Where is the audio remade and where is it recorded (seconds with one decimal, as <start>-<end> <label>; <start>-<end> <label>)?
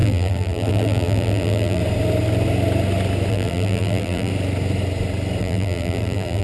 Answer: 0.0-1.8 remade; 1.8-3.3 recorded; 3.3-4.3 remade; 4.3-5.4 recorded; 5.4-6.4 remade